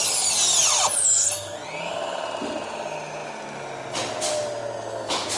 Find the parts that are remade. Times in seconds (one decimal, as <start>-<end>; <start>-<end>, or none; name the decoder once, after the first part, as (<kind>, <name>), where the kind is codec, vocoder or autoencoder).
none